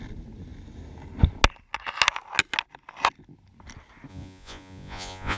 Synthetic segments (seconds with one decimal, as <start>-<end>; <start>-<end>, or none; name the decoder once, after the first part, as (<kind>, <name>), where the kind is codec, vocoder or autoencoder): 4.1-5.4 (vocoder, Vocos)